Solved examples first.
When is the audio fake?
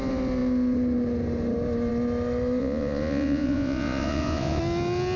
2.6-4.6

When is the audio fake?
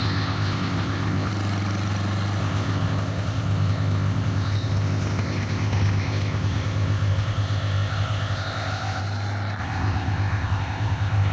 0.0-1.3; 2.4-9.0; 9.6-11.3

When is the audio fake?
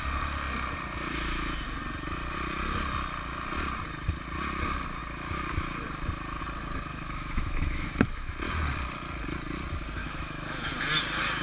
6.9-8.3; 10.0-10.7